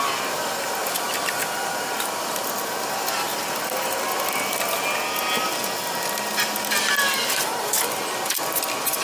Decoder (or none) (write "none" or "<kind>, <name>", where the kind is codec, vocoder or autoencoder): none